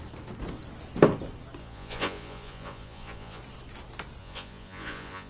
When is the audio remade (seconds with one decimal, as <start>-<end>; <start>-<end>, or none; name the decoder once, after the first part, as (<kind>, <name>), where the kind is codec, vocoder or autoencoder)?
1.6-3.4 (vocoder, Vocos); 4.2-5.3